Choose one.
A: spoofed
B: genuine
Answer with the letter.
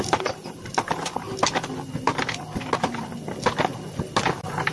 B